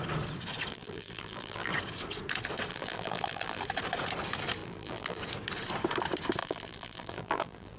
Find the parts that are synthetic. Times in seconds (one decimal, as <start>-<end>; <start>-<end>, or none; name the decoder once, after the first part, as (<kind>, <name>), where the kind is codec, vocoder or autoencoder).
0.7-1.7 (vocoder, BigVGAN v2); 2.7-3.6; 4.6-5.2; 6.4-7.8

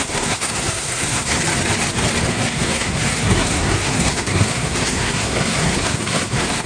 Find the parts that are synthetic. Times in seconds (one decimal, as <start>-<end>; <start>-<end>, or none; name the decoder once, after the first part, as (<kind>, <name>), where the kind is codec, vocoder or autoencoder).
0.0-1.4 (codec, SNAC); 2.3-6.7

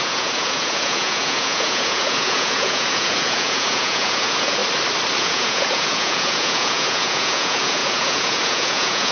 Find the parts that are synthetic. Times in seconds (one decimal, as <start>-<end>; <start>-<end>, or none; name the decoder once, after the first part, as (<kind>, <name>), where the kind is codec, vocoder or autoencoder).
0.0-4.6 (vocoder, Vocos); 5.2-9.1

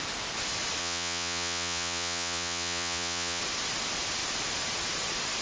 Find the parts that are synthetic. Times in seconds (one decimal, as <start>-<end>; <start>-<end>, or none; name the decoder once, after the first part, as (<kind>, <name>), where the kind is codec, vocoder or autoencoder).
0.8-3.4 (vocoder, Vocos)

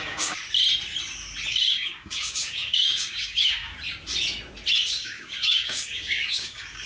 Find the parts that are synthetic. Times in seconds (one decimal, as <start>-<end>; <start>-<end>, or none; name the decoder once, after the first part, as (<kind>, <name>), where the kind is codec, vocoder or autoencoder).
0.0-0.4 (codec, DAC); 1.5-3.7; 4.9-6.9

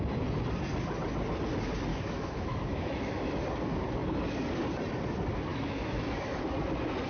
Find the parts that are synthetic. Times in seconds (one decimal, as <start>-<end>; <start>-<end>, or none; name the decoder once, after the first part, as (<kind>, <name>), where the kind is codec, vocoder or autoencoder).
1.9-3.3 (autoencoder, DAC-VAE); 5.5-6.4

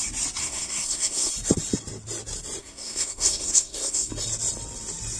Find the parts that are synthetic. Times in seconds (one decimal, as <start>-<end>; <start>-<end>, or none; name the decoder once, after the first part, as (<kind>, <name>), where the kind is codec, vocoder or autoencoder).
0.4-1.3 (codec, SNAC); 2.6-4.1

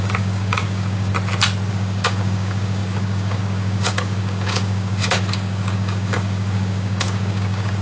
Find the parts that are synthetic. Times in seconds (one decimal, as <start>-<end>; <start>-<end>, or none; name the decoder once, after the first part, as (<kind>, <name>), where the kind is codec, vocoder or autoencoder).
0.0-1.1 (codec, DAC); 1.7-7.8